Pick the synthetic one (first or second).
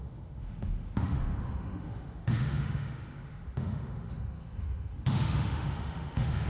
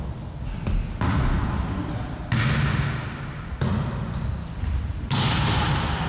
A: first